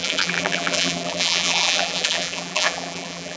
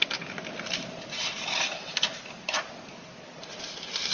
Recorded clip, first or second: second